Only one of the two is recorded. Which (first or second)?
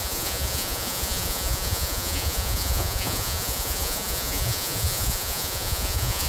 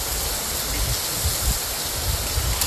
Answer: second